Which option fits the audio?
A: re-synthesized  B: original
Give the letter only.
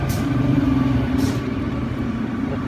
A